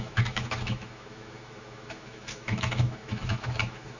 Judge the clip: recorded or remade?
remade